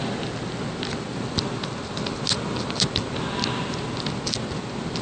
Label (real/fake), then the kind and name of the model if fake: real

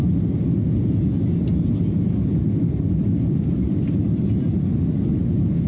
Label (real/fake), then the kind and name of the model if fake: real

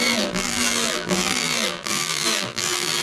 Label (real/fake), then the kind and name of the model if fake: fake, vocoder, BigVGAN v2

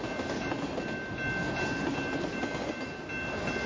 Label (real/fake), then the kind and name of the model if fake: real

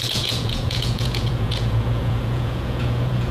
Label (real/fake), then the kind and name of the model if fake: fake, vocoder, Vocos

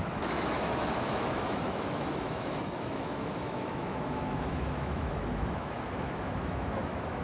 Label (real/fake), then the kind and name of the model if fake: fake, autoencoder, DAC-VAE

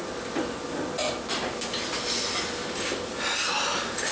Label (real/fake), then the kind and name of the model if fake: real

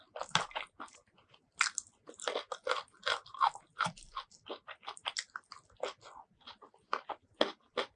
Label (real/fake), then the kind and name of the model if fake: real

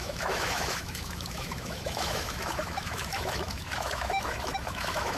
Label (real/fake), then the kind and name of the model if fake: fake, autoencoder, DAC-VAE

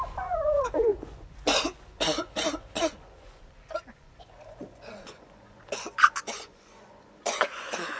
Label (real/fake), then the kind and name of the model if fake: fake, vocoder, Vocos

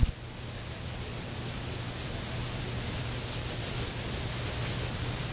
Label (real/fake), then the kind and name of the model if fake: real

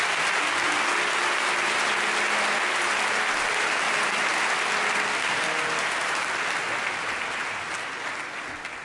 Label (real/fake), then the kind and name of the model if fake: real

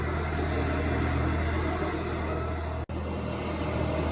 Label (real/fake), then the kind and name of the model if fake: real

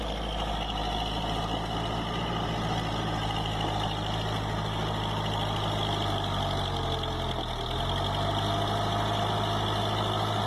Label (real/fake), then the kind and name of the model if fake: real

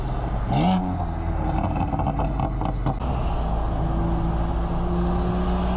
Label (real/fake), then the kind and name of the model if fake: real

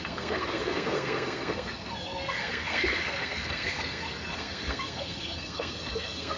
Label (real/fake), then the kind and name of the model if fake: fake, codec, SNAC